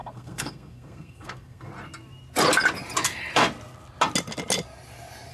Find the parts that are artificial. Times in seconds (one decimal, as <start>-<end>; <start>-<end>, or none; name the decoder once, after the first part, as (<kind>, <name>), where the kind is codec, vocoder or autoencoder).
0.0-1.7 (codec, SNAC)